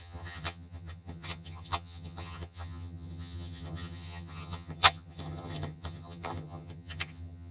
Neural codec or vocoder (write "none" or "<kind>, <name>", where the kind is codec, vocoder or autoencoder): vocoder, HiFi-GAN